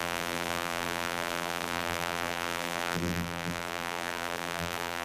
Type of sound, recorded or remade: remade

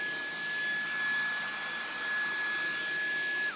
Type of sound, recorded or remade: recorded